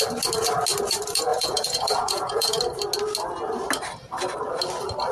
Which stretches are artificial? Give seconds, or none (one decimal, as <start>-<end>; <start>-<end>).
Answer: 1.3-2.6